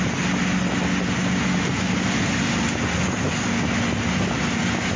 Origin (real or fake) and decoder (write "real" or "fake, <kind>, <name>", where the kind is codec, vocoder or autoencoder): real